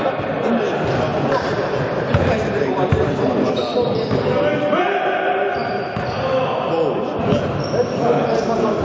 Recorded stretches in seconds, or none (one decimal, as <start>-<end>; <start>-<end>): 1.1-2.3; 5.6-7.2